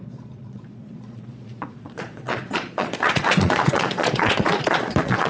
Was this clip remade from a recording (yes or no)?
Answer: yes